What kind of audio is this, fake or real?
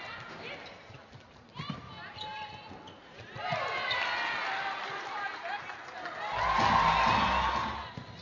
real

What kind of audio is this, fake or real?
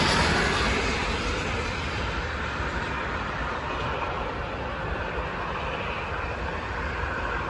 real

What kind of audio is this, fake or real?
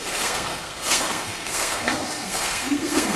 fake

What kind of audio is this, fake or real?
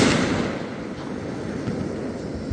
real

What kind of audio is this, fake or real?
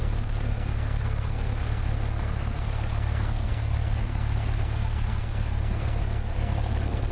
fake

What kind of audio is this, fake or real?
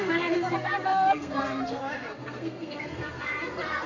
fake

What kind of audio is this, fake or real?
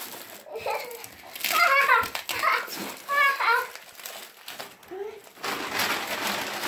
real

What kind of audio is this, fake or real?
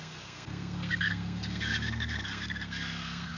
fake